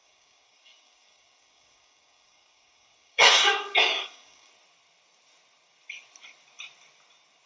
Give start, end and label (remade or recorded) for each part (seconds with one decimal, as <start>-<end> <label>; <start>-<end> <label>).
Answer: 0.0-4.5 remade; 4.5-7.5 recorded